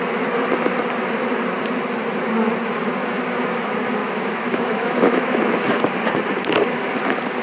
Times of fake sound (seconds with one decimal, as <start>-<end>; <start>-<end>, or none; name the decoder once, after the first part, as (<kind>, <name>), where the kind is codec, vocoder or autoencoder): 4.0-5.4 (autoencoder, DAC-VAE)